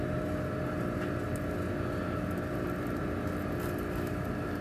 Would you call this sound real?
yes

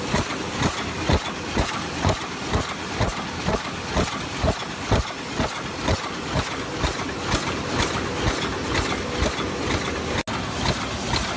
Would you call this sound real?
yes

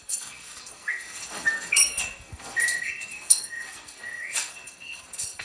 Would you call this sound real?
no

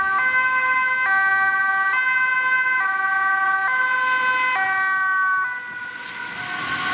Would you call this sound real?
yes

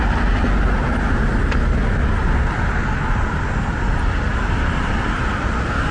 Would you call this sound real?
yes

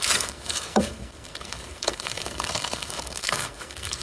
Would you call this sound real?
no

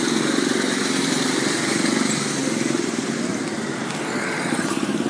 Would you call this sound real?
yes